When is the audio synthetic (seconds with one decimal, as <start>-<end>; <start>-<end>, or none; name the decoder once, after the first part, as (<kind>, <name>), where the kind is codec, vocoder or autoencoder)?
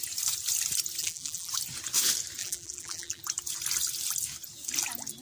1.0-1.5 (vocoder, BigVGAN v2); 2.4-3.2